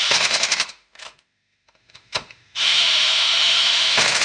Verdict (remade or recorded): remade